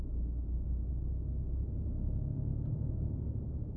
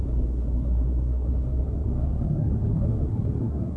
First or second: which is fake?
second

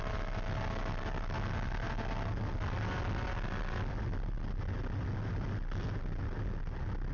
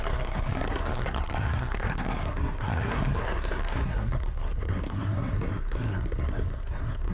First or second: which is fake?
second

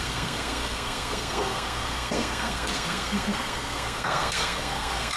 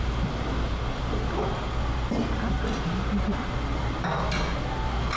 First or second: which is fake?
first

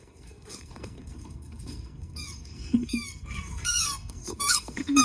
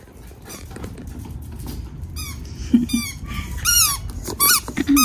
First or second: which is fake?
first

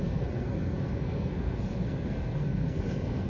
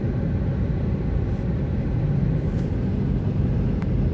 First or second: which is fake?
first